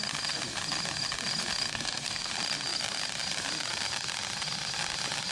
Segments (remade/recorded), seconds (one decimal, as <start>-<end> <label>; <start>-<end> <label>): 0.0-1.7 recorded; 1.7-2.3 remade; 2.3-5.3 recorded